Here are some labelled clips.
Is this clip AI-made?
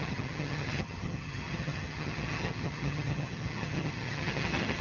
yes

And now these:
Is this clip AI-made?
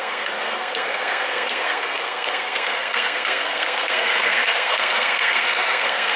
yes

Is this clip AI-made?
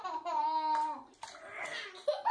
no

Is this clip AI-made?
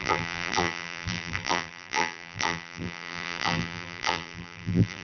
yes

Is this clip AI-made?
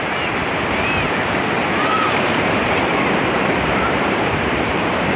yes